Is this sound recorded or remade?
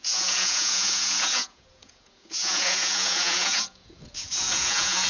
remade